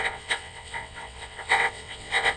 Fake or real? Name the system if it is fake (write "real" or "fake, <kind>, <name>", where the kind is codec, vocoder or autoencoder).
fake, vocoder, WaveNeXt